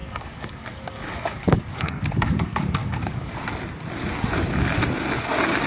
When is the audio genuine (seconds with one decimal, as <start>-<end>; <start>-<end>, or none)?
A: 3.4-5.7